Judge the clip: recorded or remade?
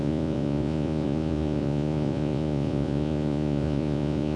remade